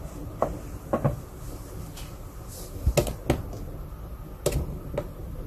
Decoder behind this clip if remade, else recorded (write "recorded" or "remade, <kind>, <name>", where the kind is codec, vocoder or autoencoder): recorded